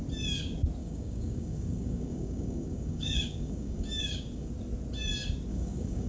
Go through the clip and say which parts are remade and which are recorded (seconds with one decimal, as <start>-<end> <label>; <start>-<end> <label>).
0.0-0.8 recorded; 0.8-4.5 remade; 4.5-5.5 recorded; 5.5-6.1 remade

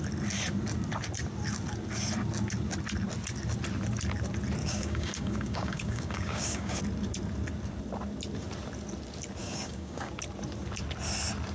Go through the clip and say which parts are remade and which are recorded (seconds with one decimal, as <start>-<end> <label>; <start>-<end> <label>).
0.0-4.6 recorded; 4.6-6.8 remade; 6.8-9.4 recorded; 9.4-10.1 remade; 10.1-11.5 recorded